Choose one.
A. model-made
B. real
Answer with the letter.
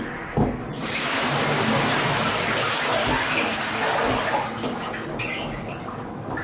B